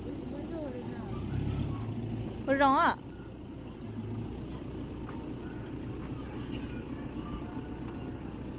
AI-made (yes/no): no